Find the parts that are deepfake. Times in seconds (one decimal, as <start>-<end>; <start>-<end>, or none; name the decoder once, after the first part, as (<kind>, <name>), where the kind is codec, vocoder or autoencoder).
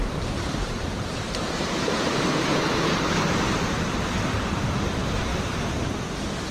0.0-5.3 (vocoder, BigVGAN v2)